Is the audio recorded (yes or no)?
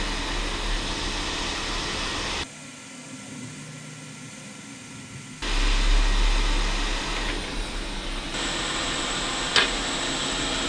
yes